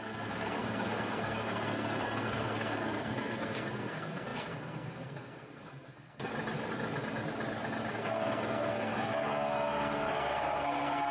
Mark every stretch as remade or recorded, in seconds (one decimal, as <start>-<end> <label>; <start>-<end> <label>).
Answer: 0.0-6.3 remade; 6.3-7.9 recorded; 7.9-11.1 remade